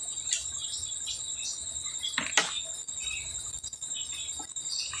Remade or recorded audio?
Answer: recorded